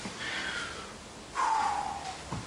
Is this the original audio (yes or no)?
yes